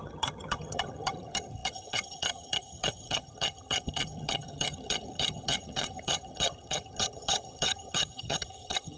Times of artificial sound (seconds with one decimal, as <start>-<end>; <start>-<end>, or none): 0.0-9.0